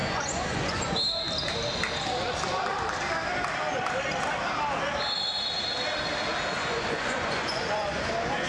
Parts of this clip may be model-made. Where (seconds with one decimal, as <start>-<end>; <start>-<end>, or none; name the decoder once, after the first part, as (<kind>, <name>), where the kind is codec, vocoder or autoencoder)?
0.0-0.9 (vocoder, Vocos); 6.6-8.1